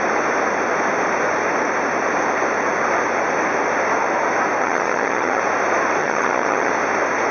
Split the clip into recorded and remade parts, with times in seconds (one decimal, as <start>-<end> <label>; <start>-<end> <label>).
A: 0.0-4.6 recorded; 4.6-5.4 remade; 5.4-6.0 recorded; 6.0-6.7 remade; 6.7-7.3 recorded